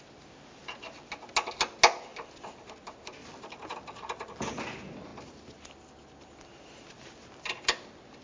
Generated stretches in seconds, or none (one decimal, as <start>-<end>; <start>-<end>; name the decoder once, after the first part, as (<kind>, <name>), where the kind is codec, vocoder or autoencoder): none